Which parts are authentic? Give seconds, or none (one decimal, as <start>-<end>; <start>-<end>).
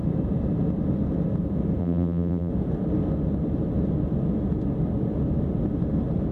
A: 0.0-1.8; 2.5-6.3